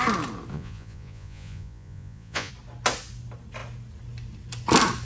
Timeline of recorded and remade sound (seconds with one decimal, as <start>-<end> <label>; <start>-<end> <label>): 0.0-0.5 recorded; 0.5-2.5 remade; 2.5-5.0 recorded